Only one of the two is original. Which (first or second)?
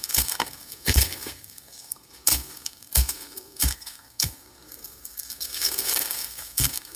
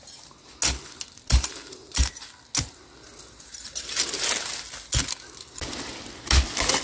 second